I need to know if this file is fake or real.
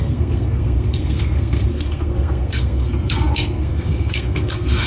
fake